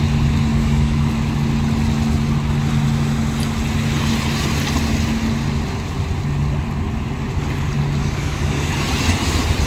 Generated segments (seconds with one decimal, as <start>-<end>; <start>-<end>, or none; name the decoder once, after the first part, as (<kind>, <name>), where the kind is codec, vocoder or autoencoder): 0.5-1.1 (codec, DAC); 8.0-8.7